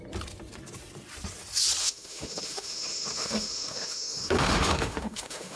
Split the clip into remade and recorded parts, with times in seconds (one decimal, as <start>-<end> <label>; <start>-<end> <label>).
0.0-1.8 recorded; 1.8-5.6 remade

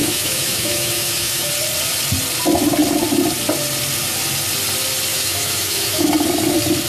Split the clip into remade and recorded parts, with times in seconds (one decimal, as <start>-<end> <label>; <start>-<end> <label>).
0.0-1.5 remade; 1.5-5.1 recorded; 5.1-6.1 remade; 6.1-6.9 recorded

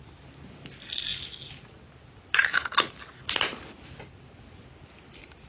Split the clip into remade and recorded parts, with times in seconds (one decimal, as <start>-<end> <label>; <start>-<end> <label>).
0.0-5.5 recorded

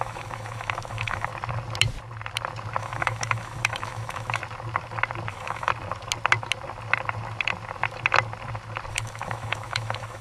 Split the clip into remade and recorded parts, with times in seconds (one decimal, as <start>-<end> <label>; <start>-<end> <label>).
0.0-1.3 remade; 1.3-2.8 recorded; 2.8-4.4 remade; 4.4-5.3 recorded; 5.3-5.7 remade; 5.7-8.9 recorded; 8.9-10.2 remade

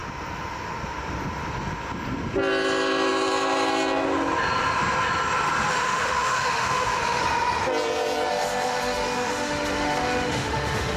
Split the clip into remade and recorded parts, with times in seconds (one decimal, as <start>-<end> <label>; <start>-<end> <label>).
0.0-5.7 recorded; 5.7-7.2 remade; 7.2-8.3 recorded; 8.3-11.0 remade